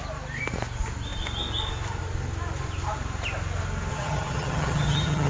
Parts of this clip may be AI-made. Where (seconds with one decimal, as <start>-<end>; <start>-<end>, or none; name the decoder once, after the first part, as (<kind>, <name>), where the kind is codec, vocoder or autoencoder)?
3.9-5.3 (vocoder, HiFi-GAN)